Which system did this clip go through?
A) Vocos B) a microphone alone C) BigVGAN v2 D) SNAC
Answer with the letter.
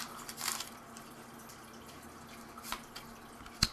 B